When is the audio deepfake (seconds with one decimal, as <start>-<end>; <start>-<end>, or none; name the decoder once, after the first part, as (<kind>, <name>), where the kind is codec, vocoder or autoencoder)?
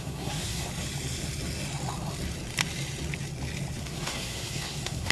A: 0.0-0.7 (codec, SNAC); 3.8-5.1